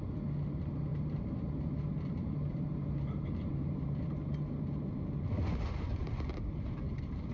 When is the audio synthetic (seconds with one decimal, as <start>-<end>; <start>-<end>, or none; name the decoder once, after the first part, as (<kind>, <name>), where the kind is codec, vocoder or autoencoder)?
0.9-4.9 (vocoder, BigVGAN v2); 5.9-7.3